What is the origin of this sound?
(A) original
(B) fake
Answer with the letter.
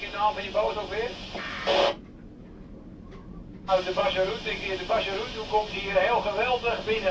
A